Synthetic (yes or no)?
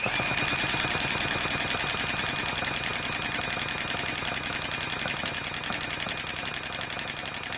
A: no